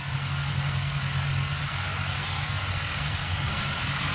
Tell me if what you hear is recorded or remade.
remade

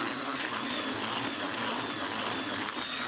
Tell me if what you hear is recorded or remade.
recorded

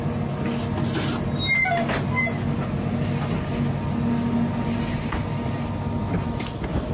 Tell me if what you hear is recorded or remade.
recorded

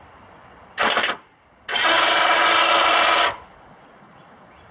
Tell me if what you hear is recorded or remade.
recorded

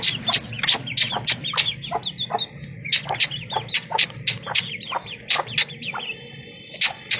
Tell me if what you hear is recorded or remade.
recorded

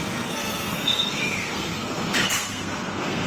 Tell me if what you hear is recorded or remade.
remade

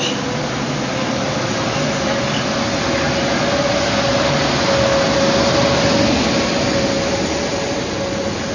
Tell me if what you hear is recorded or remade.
recorded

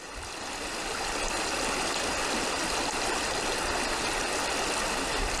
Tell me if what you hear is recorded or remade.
recorded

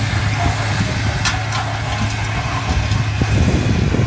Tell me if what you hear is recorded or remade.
recorded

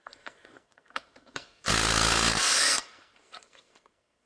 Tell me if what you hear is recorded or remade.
remade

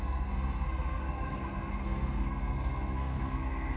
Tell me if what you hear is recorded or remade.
remade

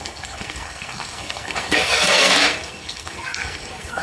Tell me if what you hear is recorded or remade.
remade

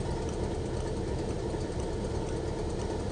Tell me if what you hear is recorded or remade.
recorded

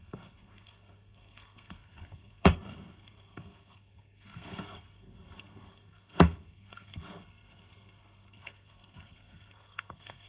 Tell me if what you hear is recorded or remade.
remade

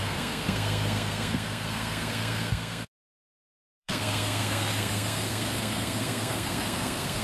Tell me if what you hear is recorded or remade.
remade